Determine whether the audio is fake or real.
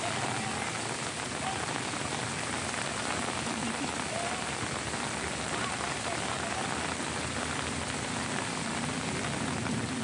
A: real